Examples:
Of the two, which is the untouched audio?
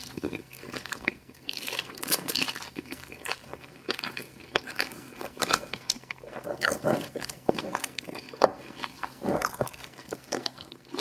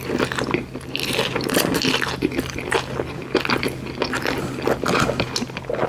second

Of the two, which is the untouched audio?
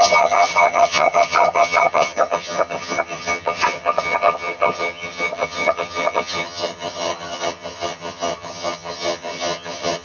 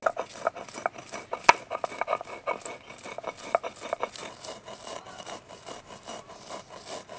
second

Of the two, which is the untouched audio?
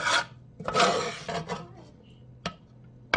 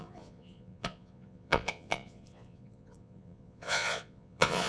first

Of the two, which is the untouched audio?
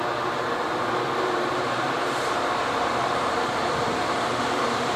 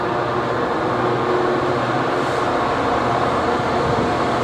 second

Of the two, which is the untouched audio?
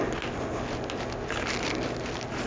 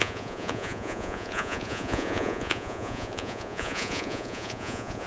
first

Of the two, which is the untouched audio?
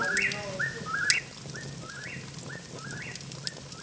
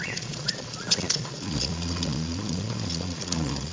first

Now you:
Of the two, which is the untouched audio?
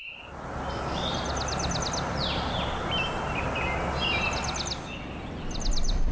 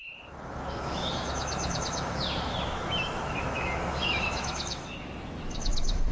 first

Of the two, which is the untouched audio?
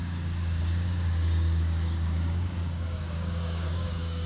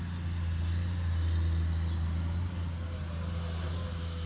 second